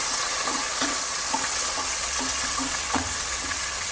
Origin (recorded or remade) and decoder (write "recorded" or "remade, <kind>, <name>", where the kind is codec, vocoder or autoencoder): remade, vocoder, WaveNeXt